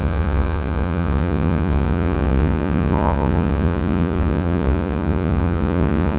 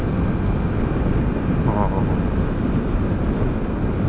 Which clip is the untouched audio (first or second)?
second